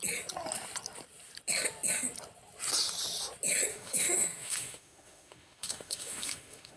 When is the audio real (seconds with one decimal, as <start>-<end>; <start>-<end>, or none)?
0.0-3.7